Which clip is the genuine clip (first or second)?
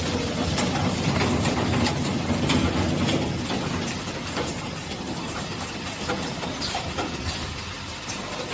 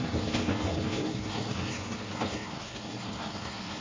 first